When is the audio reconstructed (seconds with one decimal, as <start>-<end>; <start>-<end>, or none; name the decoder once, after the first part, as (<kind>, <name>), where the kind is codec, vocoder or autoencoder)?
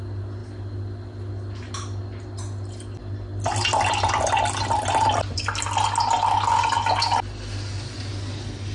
none